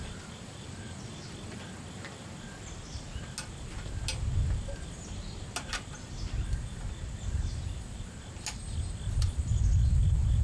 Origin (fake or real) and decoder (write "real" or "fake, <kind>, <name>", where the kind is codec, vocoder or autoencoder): real